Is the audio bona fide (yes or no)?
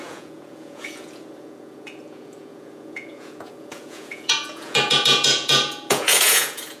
no